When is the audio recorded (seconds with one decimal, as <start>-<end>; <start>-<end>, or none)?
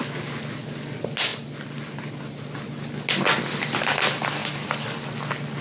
0.0-5.6